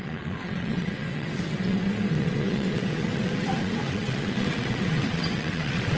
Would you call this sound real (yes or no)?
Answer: no